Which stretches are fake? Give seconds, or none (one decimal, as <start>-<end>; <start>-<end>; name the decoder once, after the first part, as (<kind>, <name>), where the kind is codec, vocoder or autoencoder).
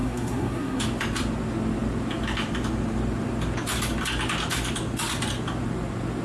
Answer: 0.0-0.8 (codec, SNAC)